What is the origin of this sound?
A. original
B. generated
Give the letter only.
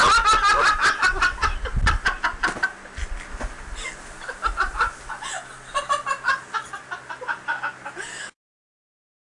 A